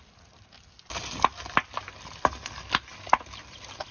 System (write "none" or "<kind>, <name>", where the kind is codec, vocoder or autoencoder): none